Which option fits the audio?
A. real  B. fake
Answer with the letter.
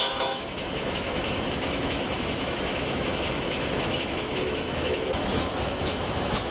B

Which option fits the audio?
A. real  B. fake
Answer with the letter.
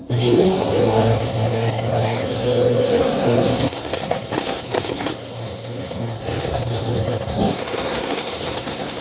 B